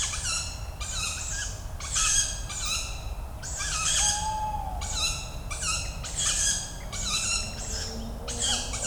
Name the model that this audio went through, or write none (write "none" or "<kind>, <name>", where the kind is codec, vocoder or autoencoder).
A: none